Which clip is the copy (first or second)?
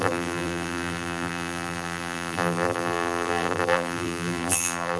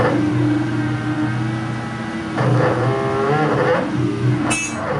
first